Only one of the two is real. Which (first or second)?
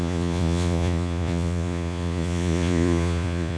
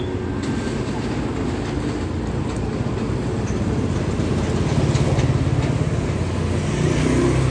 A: second